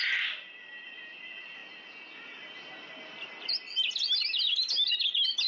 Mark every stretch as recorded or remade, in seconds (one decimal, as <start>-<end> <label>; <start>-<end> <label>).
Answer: 0.0-5.5 recorded